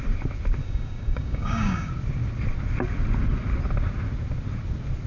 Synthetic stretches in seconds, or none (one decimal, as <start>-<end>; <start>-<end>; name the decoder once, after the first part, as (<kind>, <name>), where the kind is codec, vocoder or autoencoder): 0.6-1.9 (codec, DAC)